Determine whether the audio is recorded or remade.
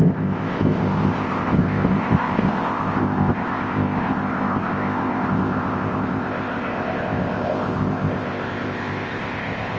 remade